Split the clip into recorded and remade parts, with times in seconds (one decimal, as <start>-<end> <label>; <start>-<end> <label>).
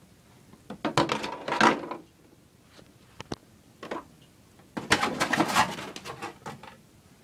0.0-7.2 recorded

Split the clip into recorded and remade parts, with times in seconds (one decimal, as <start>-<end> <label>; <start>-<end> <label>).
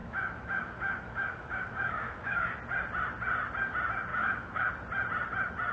0.0-2.4 remade; 2.4-4.1 recorded; 4.1-4.7 remade; 4.7-5.7 recorded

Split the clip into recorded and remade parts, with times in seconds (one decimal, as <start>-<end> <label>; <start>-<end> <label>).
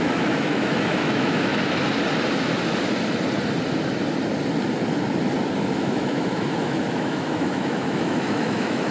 0.0-1.5 remade; 1.5-5.6 recorded; 5.6-8.9 remade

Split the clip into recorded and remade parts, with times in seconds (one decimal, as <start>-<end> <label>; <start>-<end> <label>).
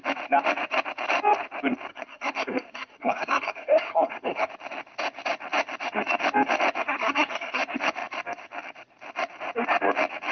0.0-1.9 recorded; 1.9-4.5 remade; 4.5-6.8 recorded; 6.8-7.6 remade; 7.6-10.3 recorded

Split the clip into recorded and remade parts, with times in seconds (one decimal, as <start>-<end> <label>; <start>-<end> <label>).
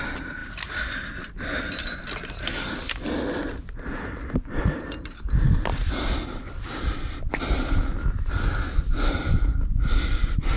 0.0-10.6 recorded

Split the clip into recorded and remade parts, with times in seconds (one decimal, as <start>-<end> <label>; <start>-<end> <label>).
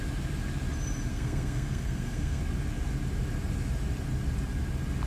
0.0-1.1 recorded; 1.1-2.4 remade; 2.4-5.1 recorded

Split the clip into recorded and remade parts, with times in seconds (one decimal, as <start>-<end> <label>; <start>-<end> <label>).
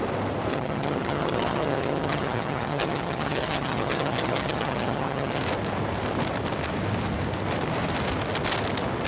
0.0-0.5 recorded; 0.5-5.4 remade; 5.4-9.1 recorded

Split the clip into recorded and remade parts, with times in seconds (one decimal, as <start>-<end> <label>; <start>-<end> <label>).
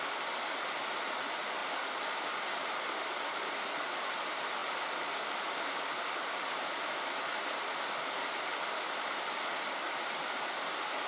0.0-11.1 remade